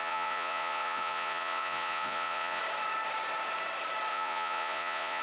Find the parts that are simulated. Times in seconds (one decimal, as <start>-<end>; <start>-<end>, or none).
0.0-2.6; 4.1-5.2